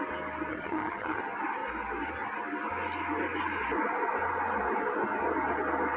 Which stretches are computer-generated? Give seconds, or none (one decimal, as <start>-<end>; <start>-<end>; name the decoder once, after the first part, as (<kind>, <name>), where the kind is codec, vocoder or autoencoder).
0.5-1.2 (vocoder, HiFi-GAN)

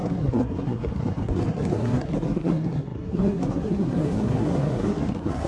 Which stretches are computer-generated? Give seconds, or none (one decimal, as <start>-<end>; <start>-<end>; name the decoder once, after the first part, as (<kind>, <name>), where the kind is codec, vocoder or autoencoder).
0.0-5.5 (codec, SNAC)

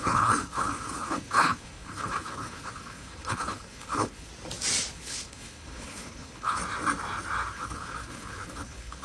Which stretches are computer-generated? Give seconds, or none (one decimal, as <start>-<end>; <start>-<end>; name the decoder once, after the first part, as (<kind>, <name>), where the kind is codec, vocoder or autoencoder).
0.0-4.3 (codec, HILCodec); 4.9-6.6; 7.5-9.0

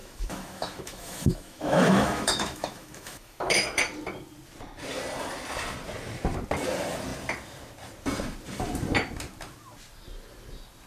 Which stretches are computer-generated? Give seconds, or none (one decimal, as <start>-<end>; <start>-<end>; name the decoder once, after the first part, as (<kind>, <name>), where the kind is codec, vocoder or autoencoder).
0.0-3.8 (autoencoder, DAC-VAE)